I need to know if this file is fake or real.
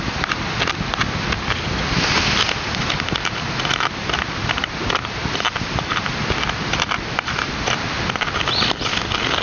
real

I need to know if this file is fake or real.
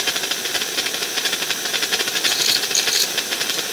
real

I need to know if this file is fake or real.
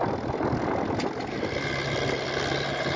real